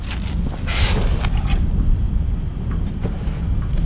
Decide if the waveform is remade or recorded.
recorded